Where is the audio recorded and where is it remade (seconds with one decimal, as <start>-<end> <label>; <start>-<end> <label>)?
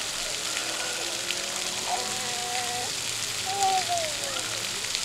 0.0-5.0 recorded